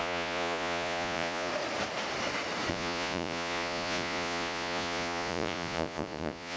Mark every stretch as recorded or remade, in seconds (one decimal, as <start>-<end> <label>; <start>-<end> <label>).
0.0-1.5 remade; 1.5-2.7 recorded; 2.7-6.6 remade